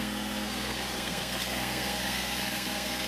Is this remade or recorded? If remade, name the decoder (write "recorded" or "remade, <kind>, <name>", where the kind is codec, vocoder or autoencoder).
remade, codec, SNAC